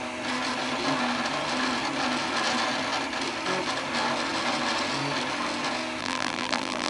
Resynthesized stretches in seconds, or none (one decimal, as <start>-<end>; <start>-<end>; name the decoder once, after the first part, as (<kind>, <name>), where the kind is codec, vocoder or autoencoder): 6.0-6.9 (vocoder, BigVGAN v2)